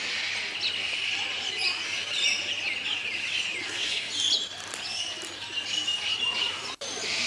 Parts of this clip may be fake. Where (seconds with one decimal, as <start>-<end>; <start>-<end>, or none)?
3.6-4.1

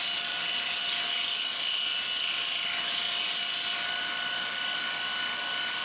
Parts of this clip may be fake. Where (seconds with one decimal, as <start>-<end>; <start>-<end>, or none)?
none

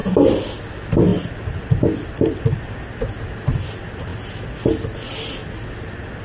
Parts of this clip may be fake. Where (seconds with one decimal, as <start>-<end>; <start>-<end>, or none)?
none

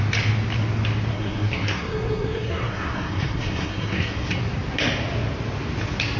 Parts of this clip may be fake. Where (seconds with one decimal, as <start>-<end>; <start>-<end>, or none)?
1.1-4.4

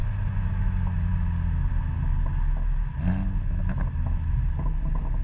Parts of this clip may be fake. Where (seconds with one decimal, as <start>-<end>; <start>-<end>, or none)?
none